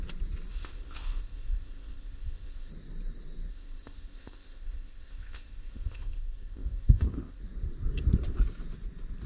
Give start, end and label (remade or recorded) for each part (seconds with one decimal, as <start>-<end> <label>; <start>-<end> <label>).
0.0-0.5 recorded; 0.5-2.7 remade; 2.7-3.5 recorded; 3.5-7.4 remade; 7.4-9.3 recorded